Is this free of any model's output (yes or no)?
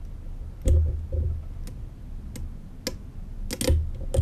yes